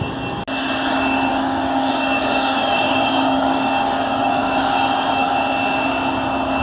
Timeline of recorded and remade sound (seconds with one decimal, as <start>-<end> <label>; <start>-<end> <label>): 0.0-1.3 recorded; 1.3-5.3 remade; 5.3-6.6 recorded